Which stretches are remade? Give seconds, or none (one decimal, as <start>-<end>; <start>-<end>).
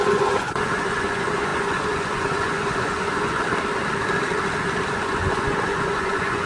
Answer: 0.0-3.4; 4.9-6.5